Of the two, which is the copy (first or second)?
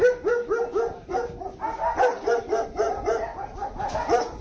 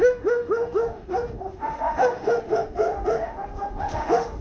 second